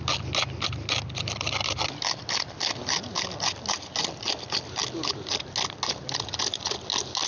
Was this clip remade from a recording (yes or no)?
no